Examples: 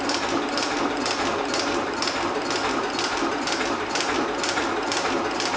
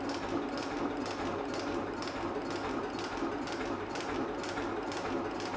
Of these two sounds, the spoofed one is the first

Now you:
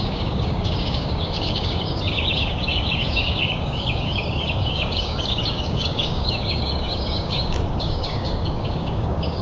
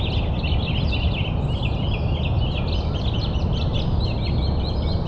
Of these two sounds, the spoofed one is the first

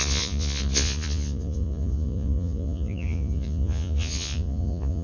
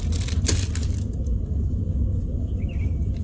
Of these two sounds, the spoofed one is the first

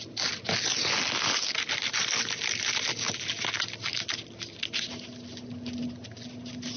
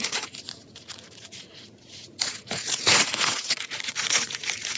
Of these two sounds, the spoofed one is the second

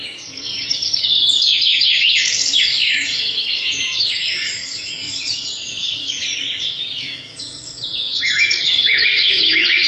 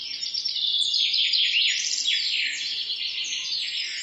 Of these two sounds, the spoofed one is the first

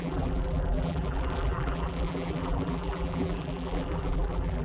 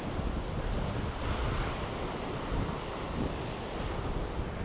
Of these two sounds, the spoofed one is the first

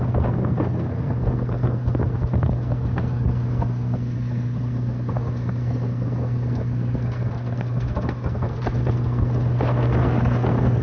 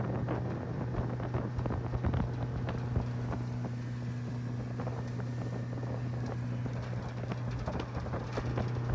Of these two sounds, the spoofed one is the first